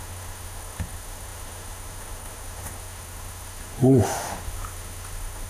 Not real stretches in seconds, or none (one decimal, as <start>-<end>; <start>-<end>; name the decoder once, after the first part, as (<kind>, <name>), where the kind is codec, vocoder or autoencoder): 0.0-5.5 (autoencoder, DAC-VAE)